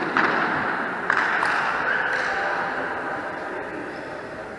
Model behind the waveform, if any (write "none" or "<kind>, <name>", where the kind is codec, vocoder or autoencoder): none